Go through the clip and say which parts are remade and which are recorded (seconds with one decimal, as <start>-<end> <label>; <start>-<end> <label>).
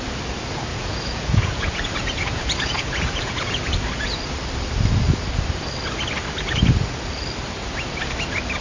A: 0.0-0.7 recorded; 0.7-3.9 remade; 3.9-8.6 recorded